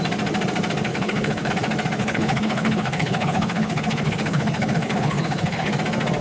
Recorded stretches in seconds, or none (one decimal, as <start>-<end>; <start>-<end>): 0.0-0.9; 1.5-2.0; 5.7-6.2